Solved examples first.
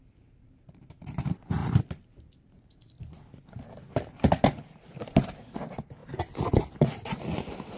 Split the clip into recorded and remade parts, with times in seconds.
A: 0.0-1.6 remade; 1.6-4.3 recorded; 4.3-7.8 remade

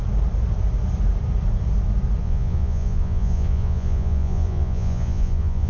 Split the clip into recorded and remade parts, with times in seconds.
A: 0.0-2.2 recorded; 2.2-5.7 remade

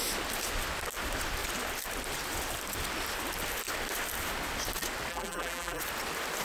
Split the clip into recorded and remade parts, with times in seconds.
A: 0.0-5.1 recorded; 5.1-5.8 remade; 5.8-6.4 recorded

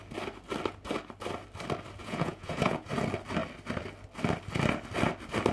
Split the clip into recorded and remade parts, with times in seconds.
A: 0.0-2.0 recorded; 2.0-2.9 remade; 2.9-5.5 recorded

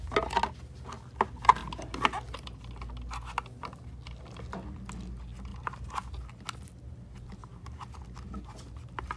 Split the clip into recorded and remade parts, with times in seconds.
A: 0.0-5.5 recorded; 5.5-6.3 remade; 6.3-7.4 recorded; 7.4-8.0 remade; 8.0-9.2 recorded

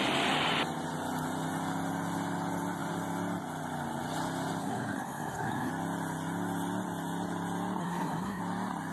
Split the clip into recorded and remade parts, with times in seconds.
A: 0.0-4.6 recorded; 4.6-5.7 remade; 5.7-7.8 recorded; 7.8-8.4 remade; 8.4-8.9 recorded

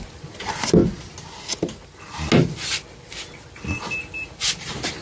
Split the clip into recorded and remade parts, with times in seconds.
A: 0.0-5.0 recorded